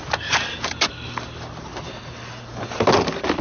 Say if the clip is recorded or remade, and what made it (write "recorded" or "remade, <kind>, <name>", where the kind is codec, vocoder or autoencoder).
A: recorded